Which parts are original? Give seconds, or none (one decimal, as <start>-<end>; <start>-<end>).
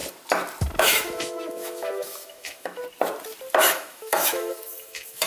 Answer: 0.0-0.8; 2.8-3.6